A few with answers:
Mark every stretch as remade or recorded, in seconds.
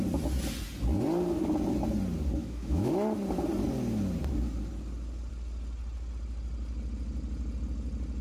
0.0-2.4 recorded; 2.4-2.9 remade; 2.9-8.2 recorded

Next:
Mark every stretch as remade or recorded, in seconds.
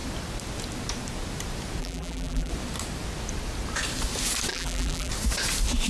0.0-1.8 recorded; 1.8-2.5 remade; 2.5-4.5 recorded; 4.5-5.1 remade; 5.1-5.9 recorded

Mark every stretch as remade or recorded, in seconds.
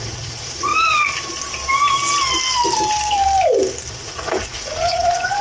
0.0-0.7 remade; 0.7-3.9 recorded; 3.9-5.4 remade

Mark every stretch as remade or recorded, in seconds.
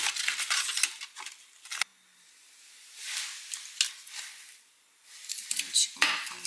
0.0-6.5 recorded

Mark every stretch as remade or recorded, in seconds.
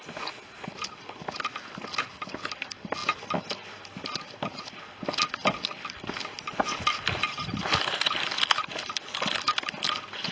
0.0-10.3 recorded